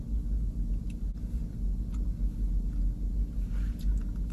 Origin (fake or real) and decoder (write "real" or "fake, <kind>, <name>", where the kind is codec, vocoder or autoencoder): real